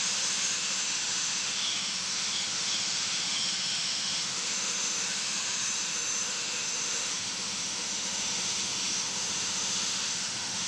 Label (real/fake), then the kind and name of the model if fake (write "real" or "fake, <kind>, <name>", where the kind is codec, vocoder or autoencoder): fake, autoencoder, DAC-VAE